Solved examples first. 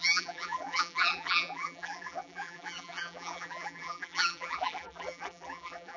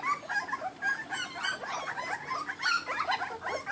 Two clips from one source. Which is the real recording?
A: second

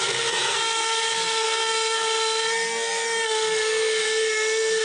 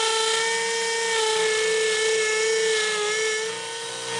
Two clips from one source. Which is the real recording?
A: second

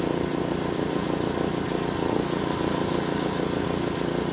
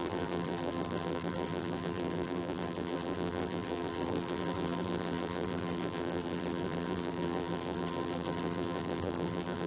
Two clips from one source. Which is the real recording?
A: first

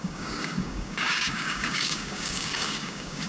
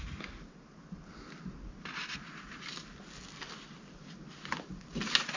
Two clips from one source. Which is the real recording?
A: second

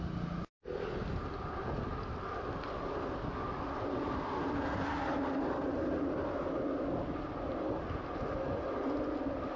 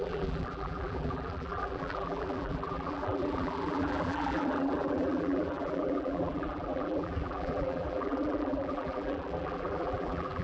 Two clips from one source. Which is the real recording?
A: first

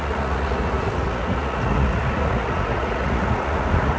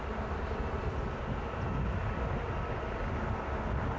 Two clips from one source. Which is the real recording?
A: second